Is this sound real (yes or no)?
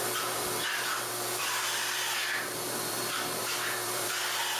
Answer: no